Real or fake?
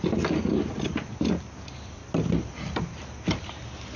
real